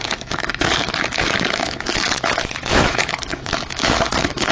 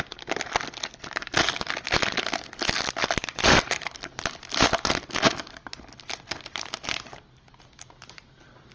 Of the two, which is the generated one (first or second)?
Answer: first